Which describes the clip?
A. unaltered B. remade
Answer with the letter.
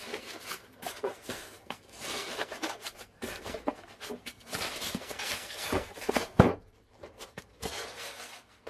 B